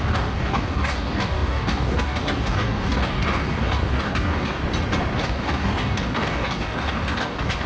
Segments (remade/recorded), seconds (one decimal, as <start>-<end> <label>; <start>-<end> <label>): 0.0-4.6 remade; 4.6-5.2 recorded; 5.2-7.7 remade